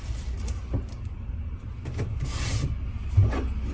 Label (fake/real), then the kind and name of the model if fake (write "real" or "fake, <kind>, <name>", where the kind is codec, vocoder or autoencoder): real